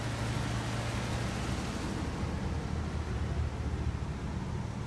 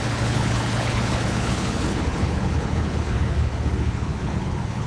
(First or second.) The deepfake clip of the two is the second